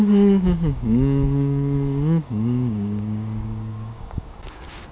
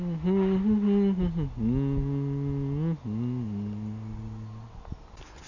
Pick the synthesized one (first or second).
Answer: first